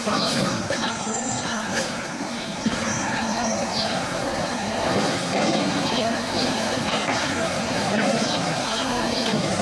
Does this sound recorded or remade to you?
remade